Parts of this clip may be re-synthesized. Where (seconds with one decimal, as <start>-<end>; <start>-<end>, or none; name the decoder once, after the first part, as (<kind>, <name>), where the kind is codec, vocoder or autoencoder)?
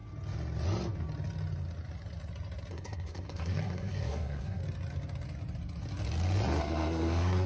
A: 2.7-4.6 (codec, SNAC); 6.6-7.5